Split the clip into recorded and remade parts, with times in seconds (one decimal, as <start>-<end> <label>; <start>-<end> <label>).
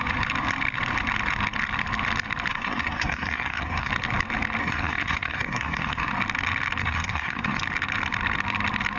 0.0-2.5 recorded; 2.5-3.9 remade; 3.9-4.6 recorded; 4.6-6.1 remade; 6.1-6.8 recorded; 6.8-7.6 remade; 7.6-9.0 recorded